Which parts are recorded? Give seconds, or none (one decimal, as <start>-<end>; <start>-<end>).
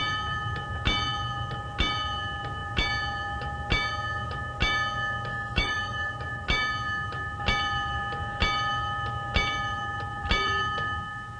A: 0.0-5.3; 6.1-11.4